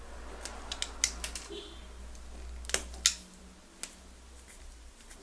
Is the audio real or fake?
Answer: real